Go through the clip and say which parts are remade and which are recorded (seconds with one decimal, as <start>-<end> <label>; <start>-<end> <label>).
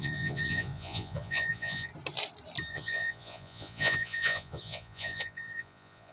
0.0-1.9 remade; 1.9-2.7 recorded; 2.7-6.1 remade